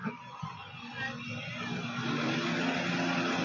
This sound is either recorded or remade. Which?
recorded